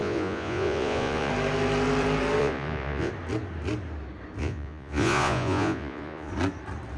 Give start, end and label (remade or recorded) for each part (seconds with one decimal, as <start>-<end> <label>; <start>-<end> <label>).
0.0-1.3 remade; 1.3-2.4 recorded; 2.4-3.1 remade; 3.1-4.4 recorded; 4.4-6.3 remade; 6.3-7.0 recorded